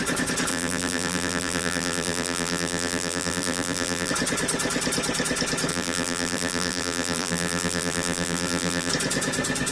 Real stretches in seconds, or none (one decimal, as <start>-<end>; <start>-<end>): 0.0-0.5; 4.1-5.7; 8.9-9.7